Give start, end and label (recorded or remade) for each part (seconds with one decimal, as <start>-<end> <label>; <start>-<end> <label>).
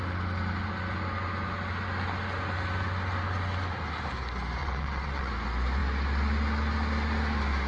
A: 0.0-4.6 recorded; 4.6-5.3 remade; 5.3-7.7 recorded